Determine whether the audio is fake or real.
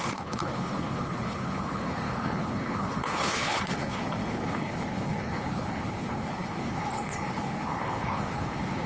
fake